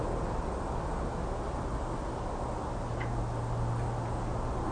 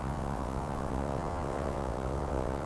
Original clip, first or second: first